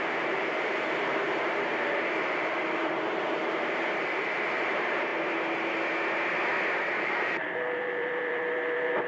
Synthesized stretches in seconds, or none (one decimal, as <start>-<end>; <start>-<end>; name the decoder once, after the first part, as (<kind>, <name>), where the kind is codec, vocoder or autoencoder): 0.0-5.1 (vocoder, BigVGAN v2); 7.0-9.1